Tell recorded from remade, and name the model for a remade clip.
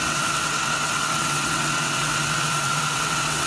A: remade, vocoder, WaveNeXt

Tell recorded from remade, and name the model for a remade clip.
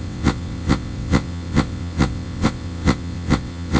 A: remade, vocoder, WaveNeXt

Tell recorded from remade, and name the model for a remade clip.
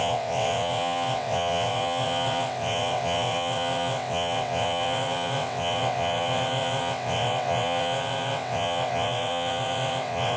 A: remade, vocoder, WaveNeXt